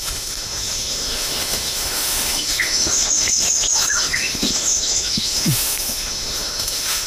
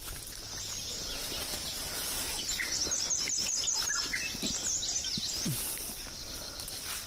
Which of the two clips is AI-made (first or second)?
first